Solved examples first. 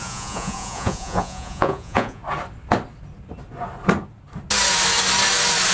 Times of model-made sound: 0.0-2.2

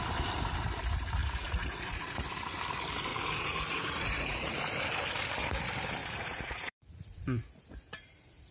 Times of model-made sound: 1.2-2.2; 3.1-4.7; 6.0-8.5

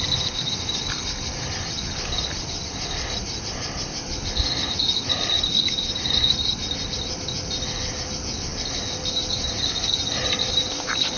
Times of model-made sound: none

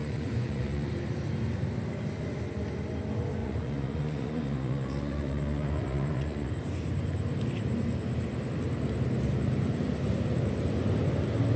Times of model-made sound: 0.0-0.9; 3.4-6.5

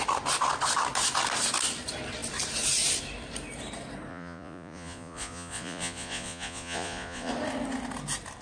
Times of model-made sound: 4.1-7.3